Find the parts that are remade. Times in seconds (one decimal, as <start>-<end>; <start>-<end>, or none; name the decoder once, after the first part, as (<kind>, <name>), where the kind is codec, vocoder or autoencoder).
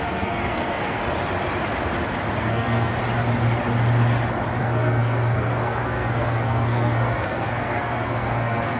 0.0-1.0 (codec, SNAC); 2.4-2.9; 4.6-8.8